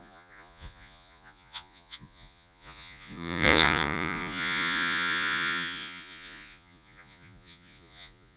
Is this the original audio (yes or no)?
no